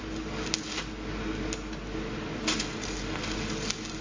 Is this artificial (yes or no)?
no